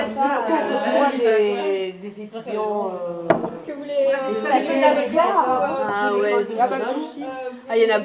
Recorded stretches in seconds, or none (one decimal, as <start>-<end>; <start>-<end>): 0.0-1.3; 2.4-8.0